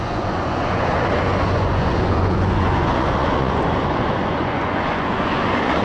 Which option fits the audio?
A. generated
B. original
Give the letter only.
A